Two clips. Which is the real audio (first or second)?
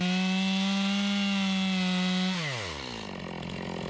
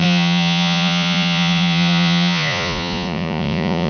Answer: first